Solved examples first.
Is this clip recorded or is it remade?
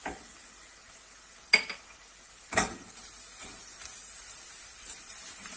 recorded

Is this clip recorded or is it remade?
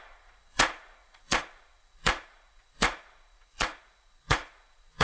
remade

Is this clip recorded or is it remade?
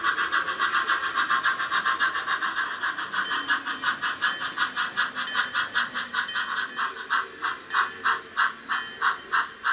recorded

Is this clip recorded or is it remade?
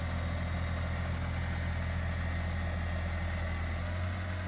recorded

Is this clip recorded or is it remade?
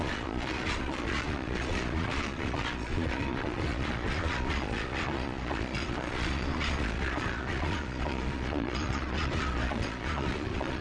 remade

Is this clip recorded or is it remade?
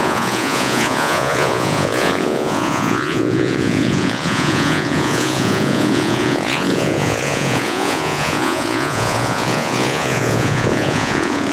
remade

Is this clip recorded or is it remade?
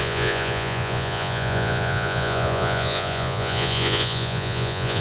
remade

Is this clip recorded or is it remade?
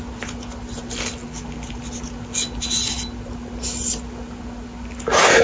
recorded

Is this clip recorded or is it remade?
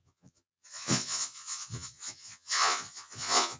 remade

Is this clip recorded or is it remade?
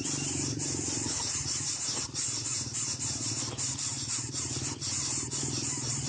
recorded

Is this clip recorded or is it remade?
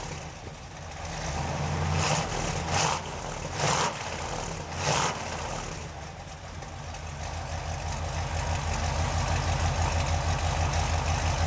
recorded